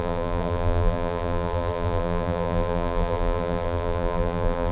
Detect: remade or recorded remade